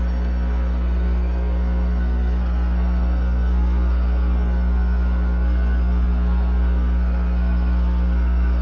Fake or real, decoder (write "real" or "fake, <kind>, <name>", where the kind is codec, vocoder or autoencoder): fake, codec, SNAC